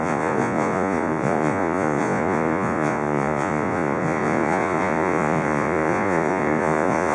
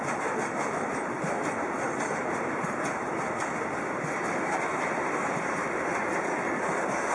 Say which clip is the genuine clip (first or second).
second